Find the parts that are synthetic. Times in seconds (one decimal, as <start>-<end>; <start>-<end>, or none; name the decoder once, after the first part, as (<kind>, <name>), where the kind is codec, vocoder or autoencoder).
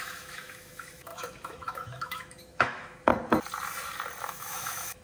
0.0-3.1 (autoencoder, DAC-VAE); 4.2-5.0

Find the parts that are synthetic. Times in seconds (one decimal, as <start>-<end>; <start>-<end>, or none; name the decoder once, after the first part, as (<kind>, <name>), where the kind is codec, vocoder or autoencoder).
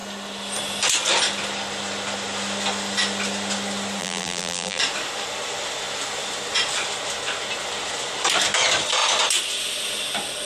4.0-4.8 (vocoder, BigVGAN v2)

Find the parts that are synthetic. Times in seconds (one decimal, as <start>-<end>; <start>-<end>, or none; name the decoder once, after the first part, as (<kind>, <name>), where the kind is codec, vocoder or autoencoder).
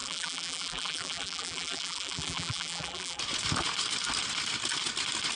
0.0-3.2 (vocoder, BigVGAN v2)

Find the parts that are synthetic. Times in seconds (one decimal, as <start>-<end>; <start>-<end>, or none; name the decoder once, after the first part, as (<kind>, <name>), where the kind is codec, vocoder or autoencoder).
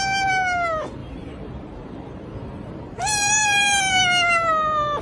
1.0-4.0 (vocoder, BigVGAN v2)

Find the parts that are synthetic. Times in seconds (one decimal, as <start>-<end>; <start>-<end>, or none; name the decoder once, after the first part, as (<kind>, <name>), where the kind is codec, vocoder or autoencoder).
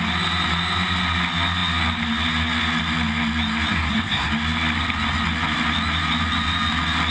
3.7-4.3 (codec, SNAC)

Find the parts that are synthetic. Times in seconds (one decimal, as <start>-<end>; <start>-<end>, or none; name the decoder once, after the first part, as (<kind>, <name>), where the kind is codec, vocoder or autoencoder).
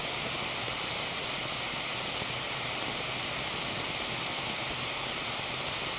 none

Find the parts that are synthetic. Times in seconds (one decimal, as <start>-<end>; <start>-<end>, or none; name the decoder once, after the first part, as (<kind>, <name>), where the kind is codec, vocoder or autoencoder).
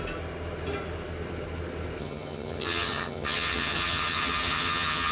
2.0-5.1 (vocoder, HiFi-GAN)